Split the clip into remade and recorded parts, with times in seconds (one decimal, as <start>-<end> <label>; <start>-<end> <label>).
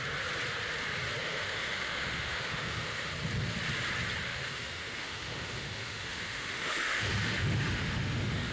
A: 0.0-1.2 recorded; 1.2-3.1 remade; 3.1-4.3 recorded; 4.3-8.5 remade